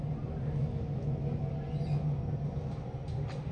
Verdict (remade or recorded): recorded